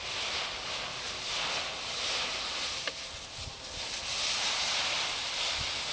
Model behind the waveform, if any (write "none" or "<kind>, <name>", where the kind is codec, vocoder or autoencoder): none